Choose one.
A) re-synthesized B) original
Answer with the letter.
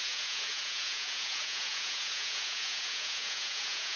A